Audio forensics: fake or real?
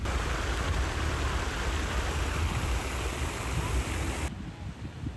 real